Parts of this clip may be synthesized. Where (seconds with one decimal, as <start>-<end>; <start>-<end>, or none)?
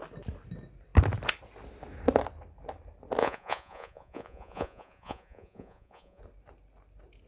3.2-6.2